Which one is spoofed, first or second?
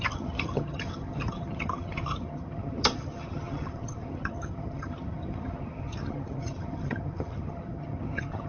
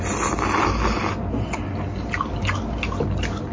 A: first